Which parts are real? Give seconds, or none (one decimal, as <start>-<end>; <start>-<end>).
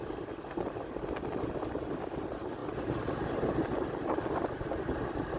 0.0-5.4